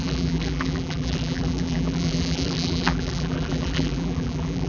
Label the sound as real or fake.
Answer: fake